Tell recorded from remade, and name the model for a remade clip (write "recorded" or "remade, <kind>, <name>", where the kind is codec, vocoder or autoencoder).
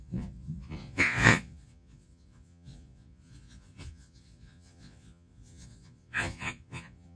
remade, vocoder, Vocos